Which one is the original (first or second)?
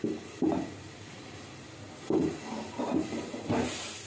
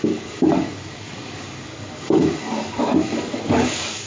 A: first